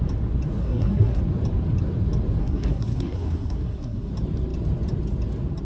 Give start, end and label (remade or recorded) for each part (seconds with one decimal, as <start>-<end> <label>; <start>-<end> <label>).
0.0-0.6 recorded; 0.6-1.2 remade; 1.2-2.4 recorded; 2.4-4.1 remade; 4.1-5.6 recorded